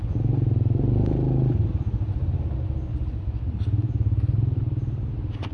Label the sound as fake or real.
real